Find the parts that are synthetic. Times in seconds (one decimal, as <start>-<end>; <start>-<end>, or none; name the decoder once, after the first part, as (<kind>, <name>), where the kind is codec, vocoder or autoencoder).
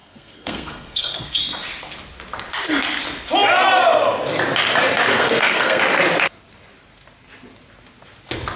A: 0.0-1.4 (codec, SNAC); 5.1-5.8